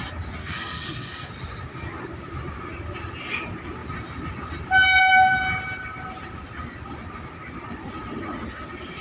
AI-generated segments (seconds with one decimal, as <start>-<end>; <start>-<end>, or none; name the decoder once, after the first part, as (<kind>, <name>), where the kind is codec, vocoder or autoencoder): 0.4-1.3 (codec, SNAC)